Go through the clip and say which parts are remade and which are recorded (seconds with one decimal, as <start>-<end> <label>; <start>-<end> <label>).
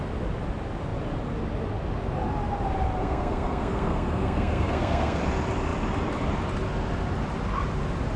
0.0-3.0 recorded; 3.0-5.2 remade; 5.2-8.2 recorded